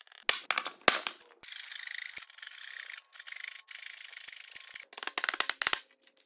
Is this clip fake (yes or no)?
no